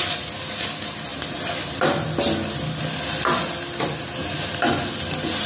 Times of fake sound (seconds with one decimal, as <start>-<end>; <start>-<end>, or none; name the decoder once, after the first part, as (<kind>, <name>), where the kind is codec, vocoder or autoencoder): none